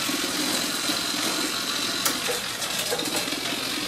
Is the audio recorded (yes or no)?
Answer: yes